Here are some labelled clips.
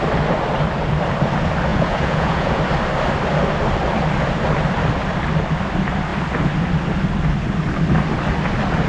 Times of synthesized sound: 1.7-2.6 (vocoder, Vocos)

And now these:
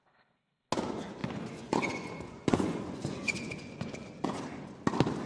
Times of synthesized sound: 1.2-4.4 (vocoder, Vocos)

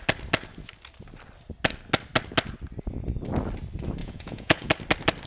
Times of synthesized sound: 4.0-4.7 (vocoder, Vocos)

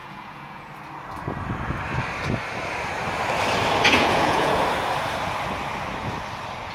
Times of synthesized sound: 0.0-0.7 (vocoder, Vocos); 3.9-4.6

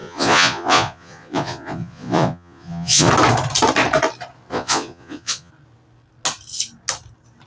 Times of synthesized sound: 0.0-3.1 (vocoder, Vocos); 4.5-5.5